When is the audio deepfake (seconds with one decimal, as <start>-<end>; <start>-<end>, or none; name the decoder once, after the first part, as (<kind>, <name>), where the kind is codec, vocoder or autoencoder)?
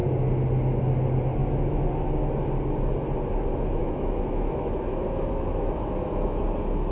3.8-6.4 (autoencoder, DAC-VAE)